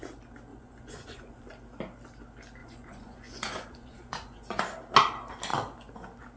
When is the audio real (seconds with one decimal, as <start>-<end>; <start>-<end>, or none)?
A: 0.0-0.5; 1.5-2.6; 4.6-6.4